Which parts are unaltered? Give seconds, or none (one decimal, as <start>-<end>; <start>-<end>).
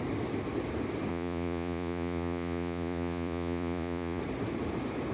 0.0-1.1; 4.2-5.1